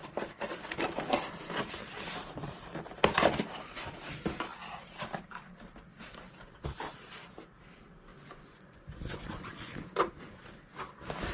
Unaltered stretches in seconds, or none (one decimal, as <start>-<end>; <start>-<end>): 0.0-8.1; 9.7-11.3